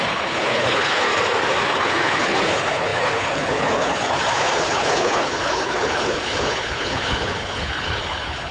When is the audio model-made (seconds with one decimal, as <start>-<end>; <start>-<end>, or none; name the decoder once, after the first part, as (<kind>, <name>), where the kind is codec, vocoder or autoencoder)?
0.0-1.1 (codec, HILCodec); 1.6-8.5